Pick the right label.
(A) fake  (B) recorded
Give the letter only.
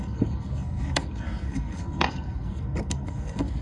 A